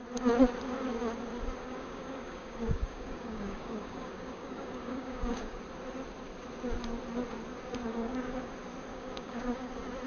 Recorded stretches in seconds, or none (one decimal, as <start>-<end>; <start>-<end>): 0.0-1.6; 5.6-7.9; 8.5-8.9; 9.7-10.1